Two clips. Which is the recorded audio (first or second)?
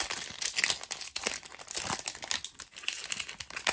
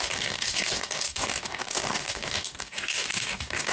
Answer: first